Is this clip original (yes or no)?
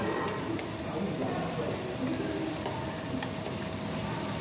yes